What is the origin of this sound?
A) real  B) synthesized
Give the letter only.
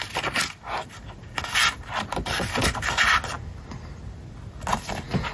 A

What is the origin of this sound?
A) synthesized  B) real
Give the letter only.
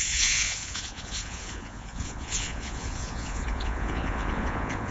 A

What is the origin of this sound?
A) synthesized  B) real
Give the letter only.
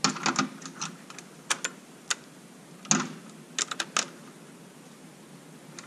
B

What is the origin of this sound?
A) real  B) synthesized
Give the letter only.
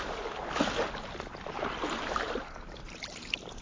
A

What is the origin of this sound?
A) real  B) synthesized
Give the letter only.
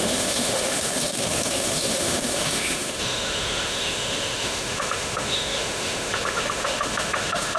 B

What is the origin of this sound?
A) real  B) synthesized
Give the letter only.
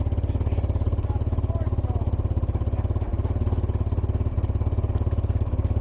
A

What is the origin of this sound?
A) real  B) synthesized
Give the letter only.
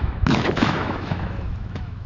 B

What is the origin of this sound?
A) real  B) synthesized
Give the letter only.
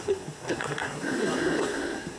B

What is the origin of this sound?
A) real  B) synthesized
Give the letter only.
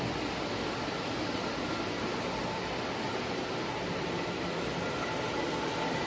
A